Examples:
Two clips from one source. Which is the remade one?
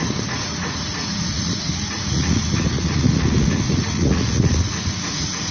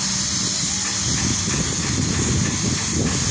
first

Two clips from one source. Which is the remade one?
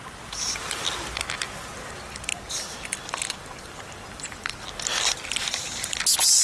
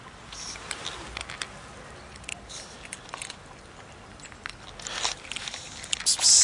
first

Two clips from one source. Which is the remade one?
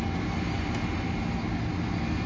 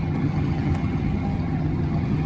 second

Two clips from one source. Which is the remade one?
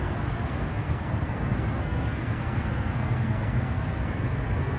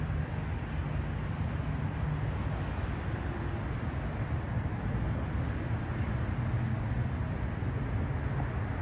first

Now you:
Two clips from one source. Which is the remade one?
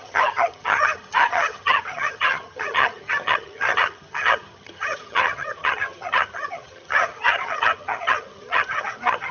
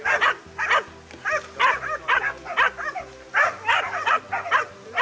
first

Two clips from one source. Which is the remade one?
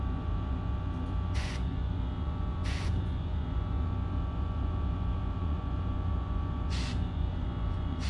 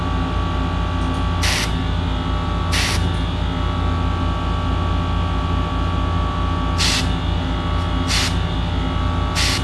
first